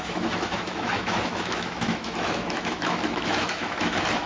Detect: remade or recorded remade